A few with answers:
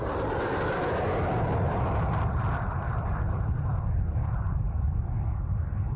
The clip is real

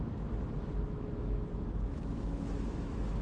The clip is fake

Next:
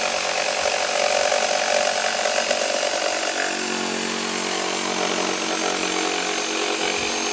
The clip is real